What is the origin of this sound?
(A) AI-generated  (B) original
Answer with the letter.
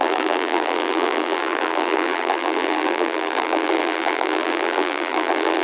A